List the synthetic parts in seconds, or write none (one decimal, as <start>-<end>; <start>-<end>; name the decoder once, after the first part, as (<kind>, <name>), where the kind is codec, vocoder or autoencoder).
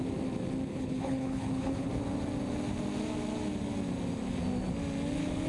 0.7-1.9 (codec, HILCodec)